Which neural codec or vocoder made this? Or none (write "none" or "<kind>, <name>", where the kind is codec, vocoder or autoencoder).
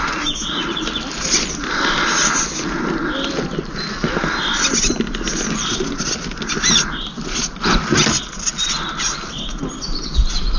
none